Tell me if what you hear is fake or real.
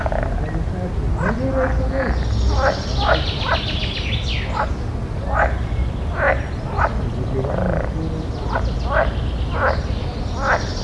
real